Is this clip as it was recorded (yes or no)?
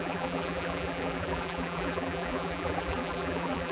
no